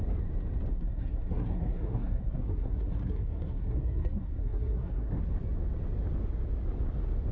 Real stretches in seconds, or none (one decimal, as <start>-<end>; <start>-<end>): 0.0-0.7; 5.1-7.3